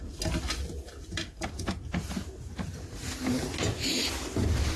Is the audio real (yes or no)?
yes